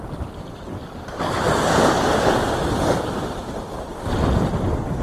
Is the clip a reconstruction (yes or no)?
yes